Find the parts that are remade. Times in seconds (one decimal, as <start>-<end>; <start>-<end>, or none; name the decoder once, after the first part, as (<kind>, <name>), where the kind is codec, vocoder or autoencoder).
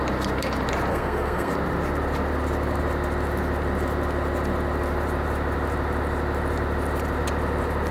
0.9-1.5 (codec, SNAC)